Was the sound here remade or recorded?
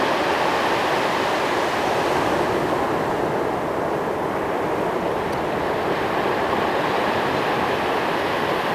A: recorded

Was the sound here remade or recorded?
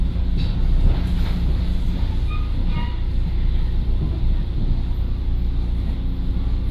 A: recorded